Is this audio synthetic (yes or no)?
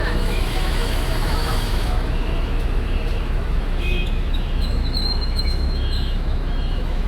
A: yes